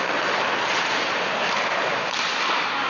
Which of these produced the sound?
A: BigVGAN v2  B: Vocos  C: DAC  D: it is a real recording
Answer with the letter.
D